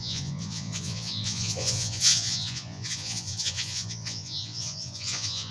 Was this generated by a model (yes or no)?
yes